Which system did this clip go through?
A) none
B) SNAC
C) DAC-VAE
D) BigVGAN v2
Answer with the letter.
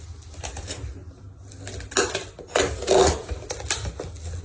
A